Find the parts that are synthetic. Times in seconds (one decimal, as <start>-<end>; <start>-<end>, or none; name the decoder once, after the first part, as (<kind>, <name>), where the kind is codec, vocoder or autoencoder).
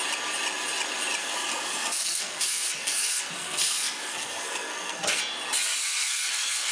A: 1.2-5.2 (codec, SNAC); 5.8-6.7